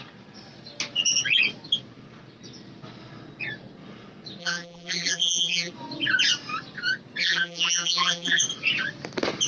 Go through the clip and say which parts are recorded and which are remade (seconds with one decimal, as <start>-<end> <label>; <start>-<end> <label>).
0.0-4.4 recorded; 4.4-5.7 remade; 5.7-7.2 recorded; 7.2-8.4 remade; 8.4-9.5 recorded